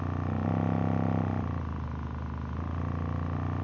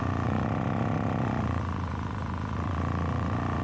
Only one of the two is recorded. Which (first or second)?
first